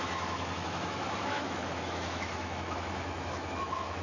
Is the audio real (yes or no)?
no